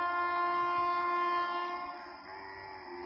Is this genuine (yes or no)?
yes